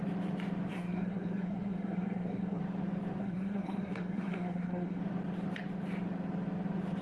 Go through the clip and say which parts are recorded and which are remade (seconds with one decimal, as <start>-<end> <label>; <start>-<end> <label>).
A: 0.0-0.7 recorded; 0.7-2.6 remade; 2.6-3.2 recorded; 3.2-5.0 remade; 5.0-7.0 recorded